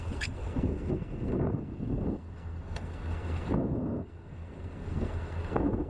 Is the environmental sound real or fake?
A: fake